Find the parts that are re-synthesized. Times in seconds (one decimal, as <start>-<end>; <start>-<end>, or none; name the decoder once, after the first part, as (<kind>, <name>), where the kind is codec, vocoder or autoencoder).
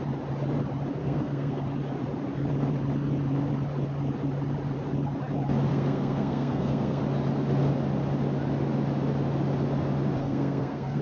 1.0-1.6 (codec, SNAC); 5.7-7.0; 10.2-11.0